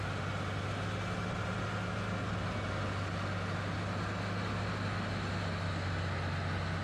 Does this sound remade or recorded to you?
recorded